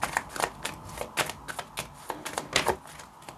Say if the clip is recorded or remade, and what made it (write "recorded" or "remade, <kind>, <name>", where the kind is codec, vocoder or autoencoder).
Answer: recorded